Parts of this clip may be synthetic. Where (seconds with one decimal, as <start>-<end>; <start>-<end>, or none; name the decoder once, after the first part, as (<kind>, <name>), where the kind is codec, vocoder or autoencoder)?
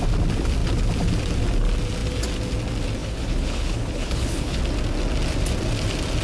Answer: 3.0-4.6 (codec, HILCodec)